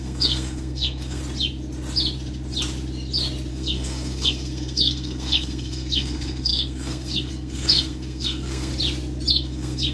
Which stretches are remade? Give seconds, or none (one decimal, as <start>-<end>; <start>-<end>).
0.0-1.2; 3.5-8.7; 9.3-9.9